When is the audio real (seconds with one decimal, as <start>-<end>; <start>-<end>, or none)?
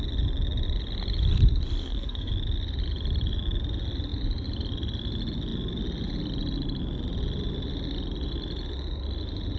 0.0-1.8; 2.3-9.6